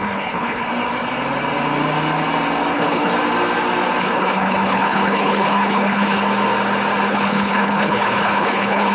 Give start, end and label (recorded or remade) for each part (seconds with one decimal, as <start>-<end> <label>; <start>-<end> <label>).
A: 0.0-0.7 remade; 0.7-2.7 recorded; 2.7-3.1 remade; 3.1-4.0 recorded; 4.0-6.2 remade; 6.2-7.1 recorded; 7.1-8.9 remade